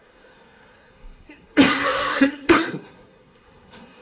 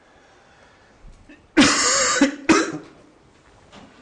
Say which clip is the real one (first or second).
second